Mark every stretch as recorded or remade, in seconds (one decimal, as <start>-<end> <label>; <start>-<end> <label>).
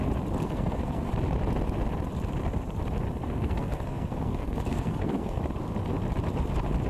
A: 0.0-0.4 recorded; 0.4-1.1 remade; 1.1-3.2 recorded; 3.2-5.4 remade; 5.4-6.9 recorded